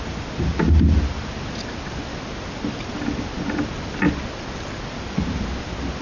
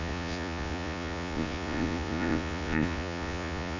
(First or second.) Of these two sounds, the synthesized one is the second